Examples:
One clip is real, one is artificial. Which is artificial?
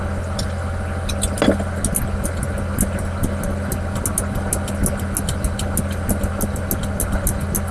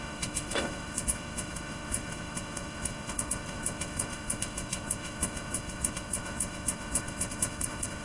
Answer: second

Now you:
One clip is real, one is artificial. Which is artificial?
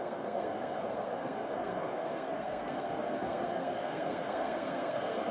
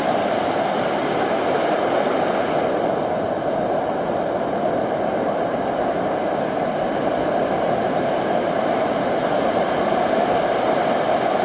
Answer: first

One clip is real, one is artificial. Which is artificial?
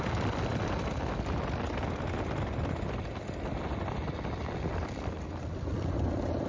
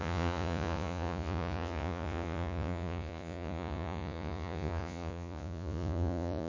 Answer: second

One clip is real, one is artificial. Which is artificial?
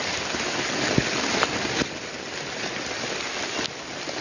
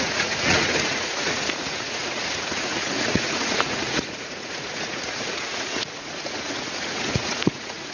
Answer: second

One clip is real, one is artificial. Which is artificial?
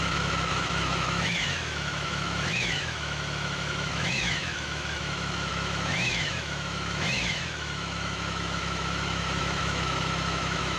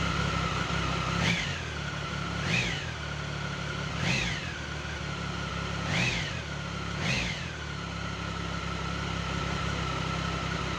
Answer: first